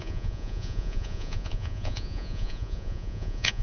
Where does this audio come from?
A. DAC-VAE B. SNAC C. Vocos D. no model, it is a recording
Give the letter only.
C